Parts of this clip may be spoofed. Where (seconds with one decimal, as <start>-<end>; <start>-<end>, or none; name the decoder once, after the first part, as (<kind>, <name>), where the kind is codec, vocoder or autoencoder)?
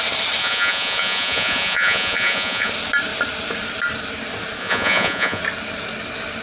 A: 0.4-2.7 (vocoder, Vocos); 4.6-5.4